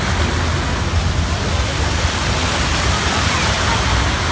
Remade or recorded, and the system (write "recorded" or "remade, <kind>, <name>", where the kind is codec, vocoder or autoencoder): recorded